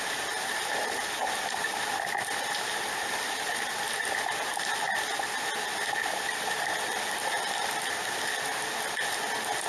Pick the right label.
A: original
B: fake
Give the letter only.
A